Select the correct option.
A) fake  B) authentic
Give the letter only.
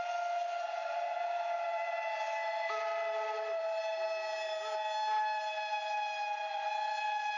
B